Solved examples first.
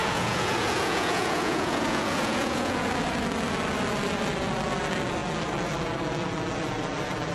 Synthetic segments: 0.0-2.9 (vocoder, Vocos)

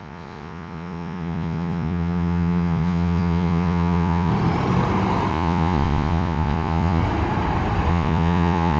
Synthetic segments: 0.0-4.3 (vocoder, Vocos); 5.3-7.0; 7.9-8.8

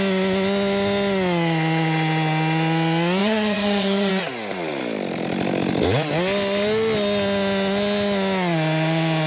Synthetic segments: 3.2-4.1 (vocoder, HiFi-GAN)

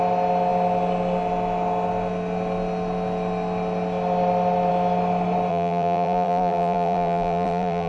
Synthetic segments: 5.5-7.9 (vocoder, BigVGAN v2)

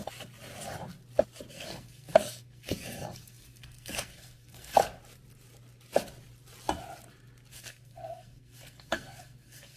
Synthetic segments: 1.5-4.8 (codec, SNAC); 7.5-9.8

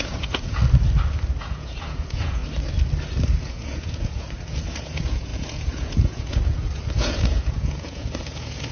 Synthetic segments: 0.0-0.6 (vocoder, Vocos); 1.4-2.4; 3.4-8.7

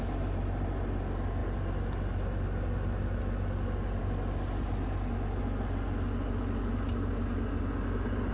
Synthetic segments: none